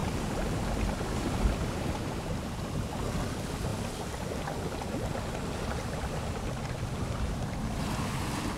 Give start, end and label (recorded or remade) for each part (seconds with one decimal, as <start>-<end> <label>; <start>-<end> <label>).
0.0-8.6 recorded